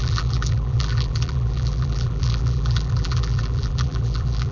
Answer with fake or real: fake